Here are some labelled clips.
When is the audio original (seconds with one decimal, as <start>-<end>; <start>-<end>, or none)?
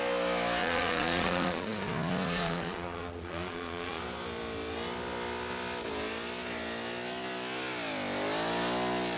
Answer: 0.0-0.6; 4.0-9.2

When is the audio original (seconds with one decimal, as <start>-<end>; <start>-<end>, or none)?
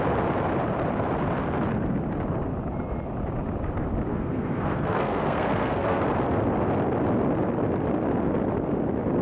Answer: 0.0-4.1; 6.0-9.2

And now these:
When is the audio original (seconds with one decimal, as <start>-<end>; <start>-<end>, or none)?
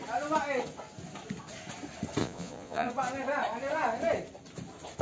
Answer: 0.0-2.2; 2.9-5.0